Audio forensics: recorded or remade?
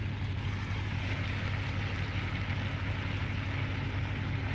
recorded